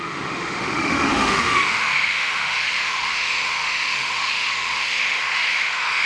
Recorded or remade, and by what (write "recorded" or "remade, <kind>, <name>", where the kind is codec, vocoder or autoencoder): remade, autoencoder, DAC-VAE